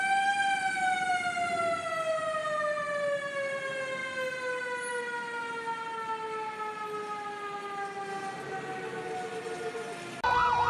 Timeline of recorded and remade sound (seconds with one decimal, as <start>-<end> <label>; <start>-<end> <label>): 0.0-10.7 recorded